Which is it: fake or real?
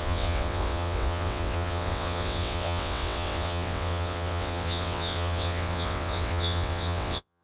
fake